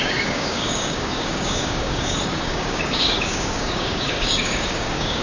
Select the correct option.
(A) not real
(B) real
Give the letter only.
A